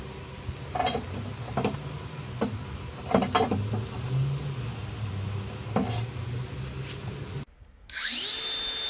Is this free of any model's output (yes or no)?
yes